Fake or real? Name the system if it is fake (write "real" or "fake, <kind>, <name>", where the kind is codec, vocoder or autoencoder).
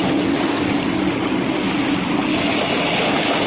real